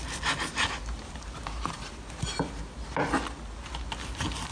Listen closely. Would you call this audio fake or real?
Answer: real